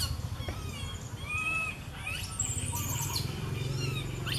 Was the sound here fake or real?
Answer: real